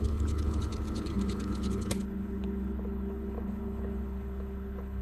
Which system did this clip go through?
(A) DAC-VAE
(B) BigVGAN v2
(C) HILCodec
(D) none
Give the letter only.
C